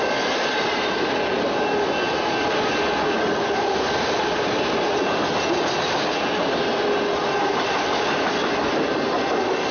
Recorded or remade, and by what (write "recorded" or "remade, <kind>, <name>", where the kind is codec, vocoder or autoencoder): recorded